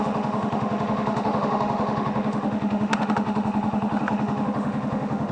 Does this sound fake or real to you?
fake